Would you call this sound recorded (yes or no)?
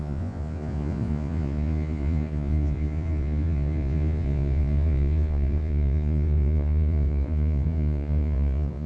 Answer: no